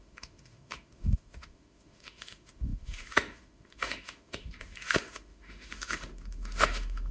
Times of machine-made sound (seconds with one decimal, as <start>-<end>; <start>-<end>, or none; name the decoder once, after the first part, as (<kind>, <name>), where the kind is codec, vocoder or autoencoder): 0.0-7.1 (autoencoder, DAC-VAE)